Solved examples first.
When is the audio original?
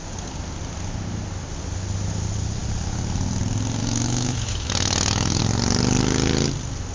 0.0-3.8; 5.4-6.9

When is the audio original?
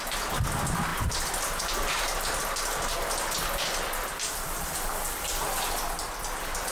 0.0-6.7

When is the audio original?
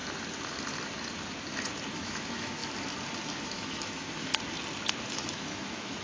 0.0-1.9; 2.6-3.3; 4.3-5.1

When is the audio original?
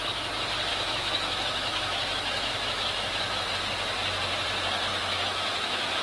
0.0-0.7; 3.5-4.9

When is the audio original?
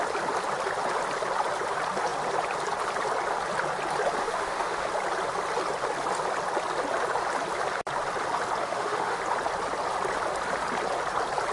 0.0-4.2; 4.9-8.6; 9.2-11.5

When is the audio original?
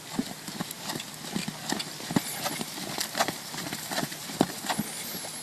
0.0-5.4